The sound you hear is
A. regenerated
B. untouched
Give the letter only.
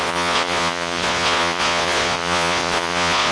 A